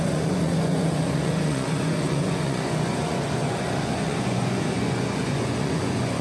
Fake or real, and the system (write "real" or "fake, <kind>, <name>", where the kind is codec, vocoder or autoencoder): fake, vocoder, Vocos